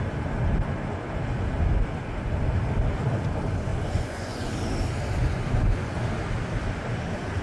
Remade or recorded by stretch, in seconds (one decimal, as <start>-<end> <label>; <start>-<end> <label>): 0.0-3.7 recorded; 3.7-4.5 remade; 4.5-5.2 recorded; 5.2-5.9 remade; 5.9-7.4 recorded